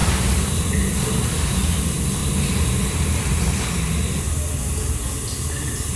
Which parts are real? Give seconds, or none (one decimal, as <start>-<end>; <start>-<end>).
0.6-6.0